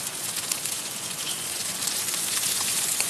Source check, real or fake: fake